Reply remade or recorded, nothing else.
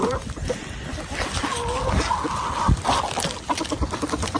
recorded